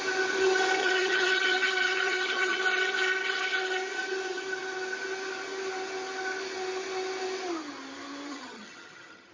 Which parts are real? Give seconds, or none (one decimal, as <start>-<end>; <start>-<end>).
0.0-0.8; 2.6-8.3